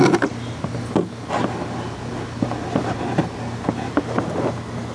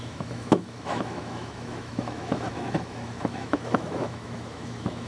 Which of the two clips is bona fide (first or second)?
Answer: first